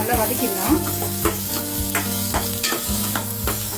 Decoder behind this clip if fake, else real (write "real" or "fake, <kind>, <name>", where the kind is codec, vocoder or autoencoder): fake, codec, DAC